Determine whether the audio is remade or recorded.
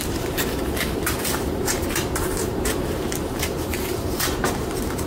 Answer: remade